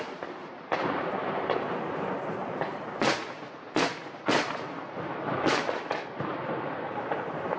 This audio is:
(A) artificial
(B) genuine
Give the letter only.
B